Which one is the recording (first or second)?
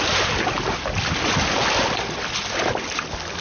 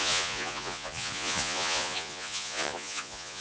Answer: first